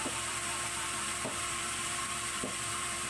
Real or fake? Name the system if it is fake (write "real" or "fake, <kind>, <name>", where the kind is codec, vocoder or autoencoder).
fake, vocoder, BigVGAN v2